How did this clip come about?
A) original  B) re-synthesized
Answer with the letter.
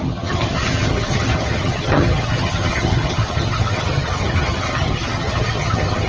B